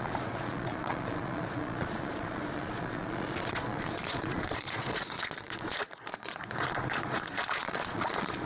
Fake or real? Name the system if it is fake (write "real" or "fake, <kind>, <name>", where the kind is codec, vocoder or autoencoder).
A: fake, vocoder, Vocos